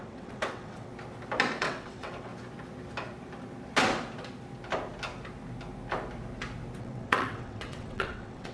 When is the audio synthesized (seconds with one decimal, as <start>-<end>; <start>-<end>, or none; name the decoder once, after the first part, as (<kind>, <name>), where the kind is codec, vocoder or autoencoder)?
0.0-0.9 (vocoder, WaveNeXt); 1.6-2.3; 6.8-8.5